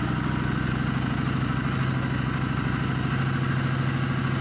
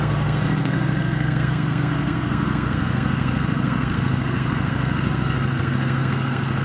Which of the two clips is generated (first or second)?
second